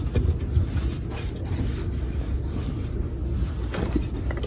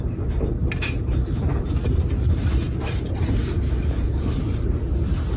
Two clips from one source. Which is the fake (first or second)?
second